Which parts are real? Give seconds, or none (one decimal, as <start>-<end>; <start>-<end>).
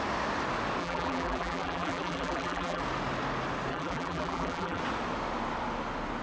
0.0-0.8; 2.8-3.7; 4.8-6.2